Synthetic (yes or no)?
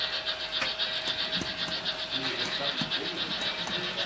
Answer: no